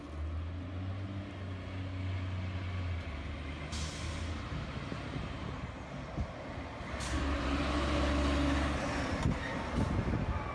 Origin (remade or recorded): recorded